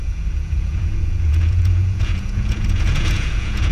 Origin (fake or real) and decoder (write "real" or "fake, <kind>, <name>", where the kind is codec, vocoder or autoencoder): fake, vocoder, Vocos